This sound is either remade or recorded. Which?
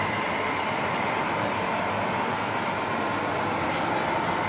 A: recorded